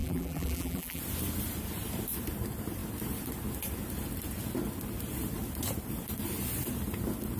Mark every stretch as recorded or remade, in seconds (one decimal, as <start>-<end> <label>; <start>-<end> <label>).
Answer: 0.0-1.0 remade; 1.0-7.4 recorded